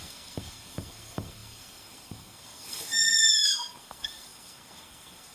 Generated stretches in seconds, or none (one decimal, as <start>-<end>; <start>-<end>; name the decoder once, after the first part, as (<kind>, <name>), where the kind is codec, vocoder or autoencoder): 0.0-5.3 (codec, SNAC)